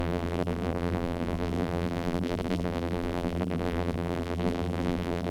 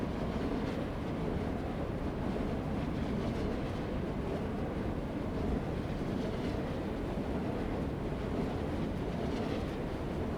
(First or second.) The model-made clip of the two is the first